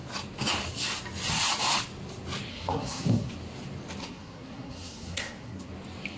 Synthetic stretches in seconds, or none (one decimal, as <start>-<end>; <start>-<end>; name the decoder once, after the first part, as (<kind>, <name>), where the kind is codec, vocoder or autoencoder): 2.5-3.3 (codec, SNAC); 4.0-5.7